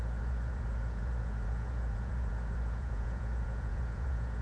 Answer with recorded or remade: remade